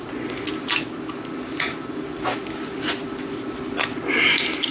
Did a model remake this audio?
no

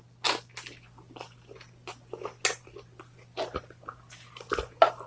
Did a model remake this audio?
no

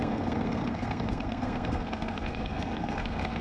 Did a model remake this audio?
yes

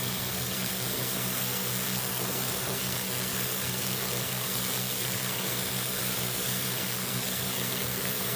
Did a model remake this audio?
yes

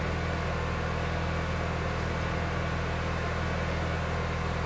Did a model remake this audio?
no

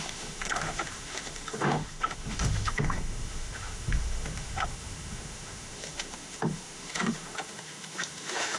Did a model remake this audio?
yes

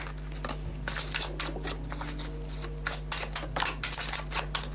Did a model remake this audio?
no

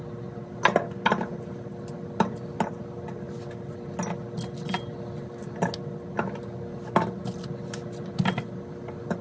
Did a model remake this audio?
no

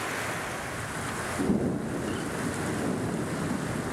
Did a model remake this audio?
no